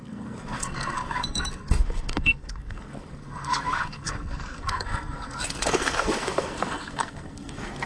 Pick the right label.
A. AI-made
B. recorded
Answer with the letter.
A